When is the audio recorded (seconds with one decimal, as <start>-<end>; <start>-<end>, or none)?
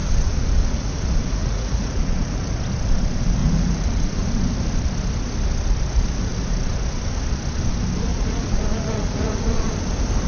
2.6-3.4; 4.3-8.1; 9.8-10.3